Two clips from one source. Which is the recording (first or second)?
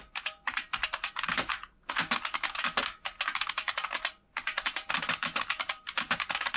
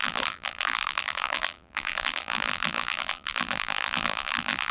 first